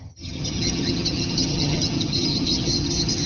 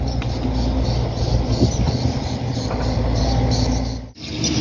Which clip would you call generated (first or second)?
first